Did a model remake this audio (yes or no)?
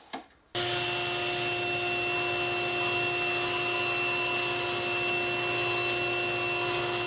no